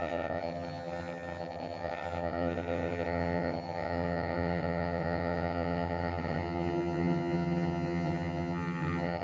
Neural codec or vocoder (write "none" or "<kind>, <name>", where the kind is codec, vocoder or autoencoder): vocoder, HiFi-GAN